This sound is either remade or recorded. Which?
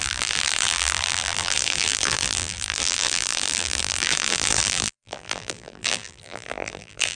remade